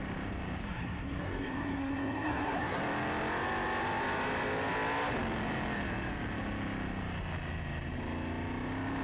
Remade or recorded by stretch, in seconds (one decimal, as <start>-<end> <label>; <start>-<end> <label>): 0.0-0.6 recorded; 0.6-2.8 remade; 2.8-9.0 recorded